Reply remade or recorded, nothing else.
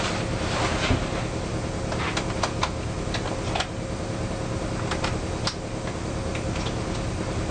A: recorded